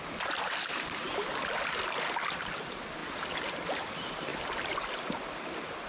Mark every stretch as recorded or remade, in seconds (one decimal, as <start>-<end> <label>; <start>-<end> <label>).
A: 0.0-5.9 recorded